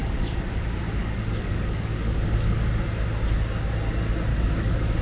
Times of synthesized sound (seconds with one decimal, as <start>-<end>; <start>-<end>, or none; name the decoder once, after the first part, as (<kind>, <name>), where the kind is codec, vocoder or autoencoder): 0.0-0.6 (codec, DAC); 1.0-2.6; 4.3-5.0